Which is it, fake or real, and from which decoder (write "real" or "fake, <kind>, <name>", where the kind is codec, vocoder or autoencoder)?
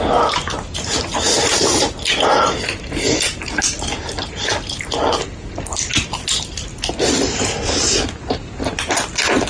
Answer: real